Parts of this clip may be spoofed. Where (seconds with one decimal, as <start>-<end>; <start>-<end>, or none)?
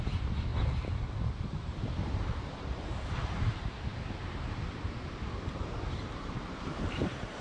0.0-0.5; 1.3-7.4